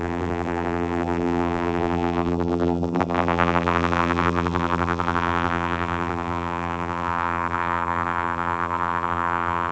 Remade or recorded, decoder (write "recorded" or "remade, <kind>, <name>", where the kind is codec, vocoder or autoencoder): remade, vocoder, BigVGAN v2